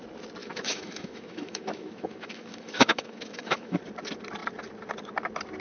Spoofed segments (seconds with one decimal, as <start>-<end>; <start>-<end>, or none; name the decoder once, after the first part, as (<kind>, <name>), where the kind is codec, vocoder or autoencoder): 0.4-3.8 (autoencoder, DAC-VAE)